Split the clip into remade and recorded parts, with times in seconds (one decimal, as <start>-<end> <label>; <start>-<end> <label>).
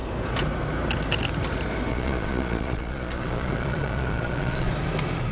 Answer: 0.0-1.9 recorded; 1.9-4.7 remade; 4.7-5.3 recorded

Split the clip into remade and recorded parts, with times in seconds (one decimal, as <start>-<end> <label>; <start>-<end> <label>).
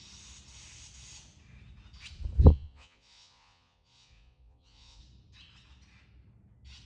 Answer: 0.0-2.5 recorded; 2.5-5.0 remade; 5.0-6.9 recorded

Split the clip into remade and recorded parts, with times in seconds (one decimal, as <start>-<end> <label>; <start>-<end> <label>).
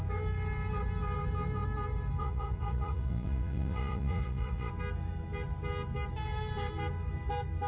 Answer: 0.0-2.2 recorded; 2.2-4.7 remade; 4.7-7.7 recorded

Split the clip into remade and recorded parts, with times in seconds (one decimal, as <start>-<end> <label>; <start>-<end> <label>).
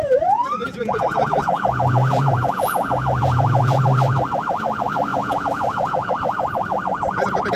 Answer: 0.0-0.6 recorded; 0.6-3.8 remade; 3.8-5.1 recorded; 5.1-6.1 remade; 6.1-7.5 recorded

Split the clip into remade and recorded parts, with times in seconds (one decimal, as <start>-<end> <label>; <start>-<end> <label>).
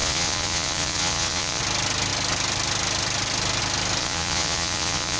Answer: 0.0-1.6 remade; 1.6-4.0 recorded; 4.0-5.2 remade